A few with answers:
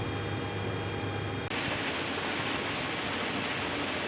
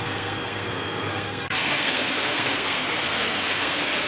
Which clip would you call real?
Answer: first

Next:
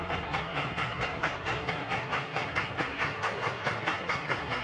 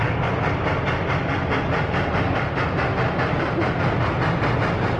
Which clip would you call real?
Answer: second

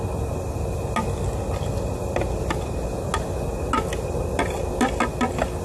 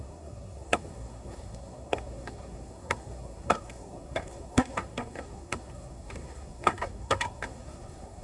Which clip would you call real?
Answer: first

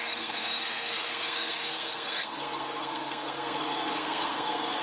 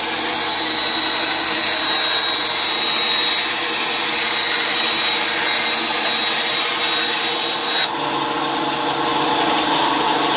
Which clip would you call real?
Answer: second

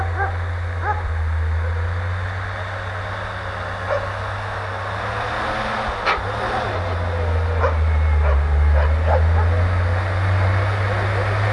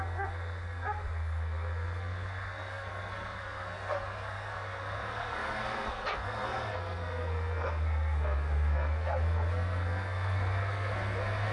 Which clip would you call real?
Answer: first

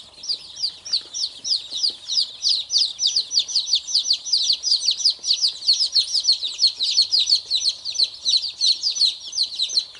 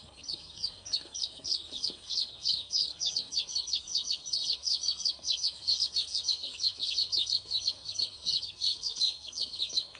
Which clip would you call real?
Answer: first